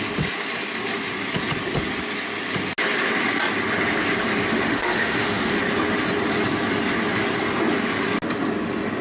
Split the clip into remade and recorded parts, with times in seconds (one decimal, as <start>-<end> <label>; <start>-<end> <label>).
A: 0.0-4.5 recorded; 4.5-5.6 remade; 5.6-9.0 recorded